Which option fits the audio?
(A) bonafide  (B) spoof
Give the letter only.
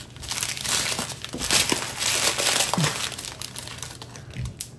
A